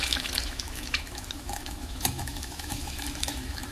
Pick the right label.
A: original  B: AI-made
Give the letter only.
B